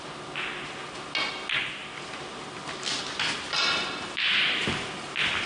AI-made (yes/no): no